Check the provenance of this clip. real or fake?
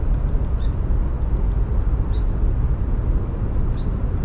real